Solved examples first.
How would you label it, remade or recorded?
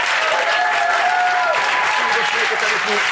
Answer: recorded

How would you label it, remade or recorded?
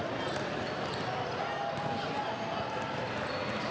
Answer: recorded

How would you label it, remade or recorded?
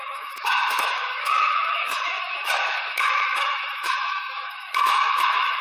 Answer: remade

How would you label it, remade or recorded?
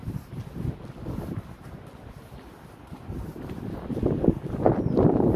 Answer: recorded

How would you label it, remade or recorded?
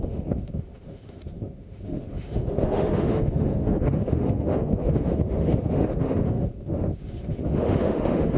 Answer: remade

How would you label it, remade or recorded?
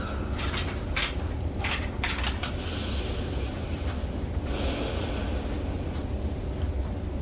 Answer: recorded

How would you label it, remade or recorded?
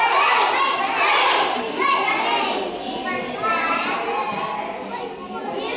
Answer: recorded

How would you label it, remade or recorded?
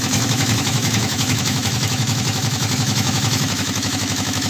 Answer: remade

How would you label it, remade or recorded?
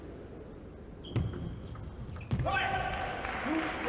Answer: recorded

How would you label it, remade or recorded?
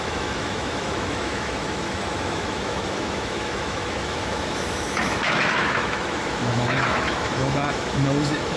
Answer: remade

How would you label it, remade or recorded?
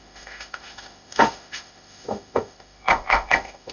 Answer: remade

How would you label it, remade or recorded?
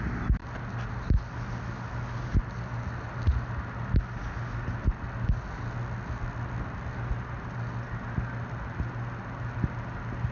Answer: recorded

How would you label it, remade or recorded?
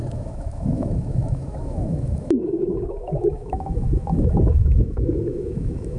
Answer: remade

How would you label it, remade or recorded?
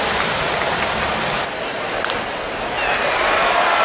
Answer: recorded